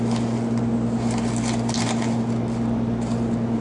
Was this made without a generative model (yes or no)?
yes